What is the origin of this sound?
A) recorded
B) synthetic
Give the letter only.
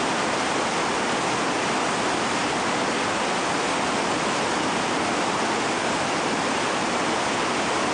A